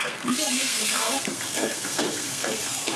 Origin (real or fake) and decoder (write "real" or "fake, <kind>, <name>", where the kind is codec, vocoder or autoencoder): fake, codec, SNAC